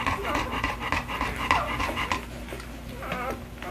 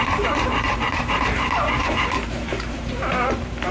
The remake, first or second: second